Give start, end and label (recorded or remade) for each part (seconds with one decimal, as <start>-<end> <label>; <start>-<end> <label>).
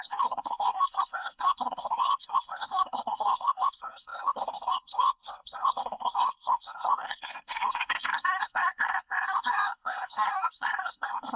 0.0-11.4 remade